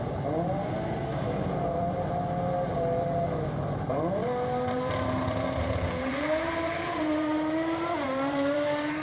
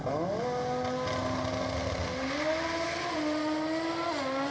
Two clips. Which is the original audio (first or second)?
second